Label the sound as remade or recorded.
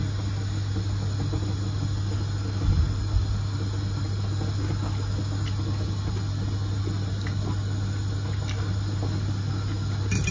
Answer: recorded